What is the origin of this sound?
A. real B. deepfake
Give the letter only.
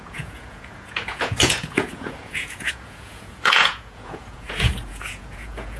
B